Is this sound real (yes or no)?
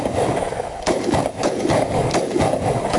no